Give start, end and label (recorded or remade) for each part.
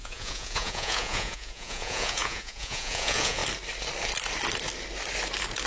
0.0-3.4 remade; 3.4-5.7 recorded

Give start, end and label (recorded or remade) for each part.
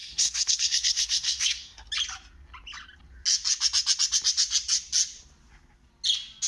0.0-1.9 remade; 1.9-6.5 recorded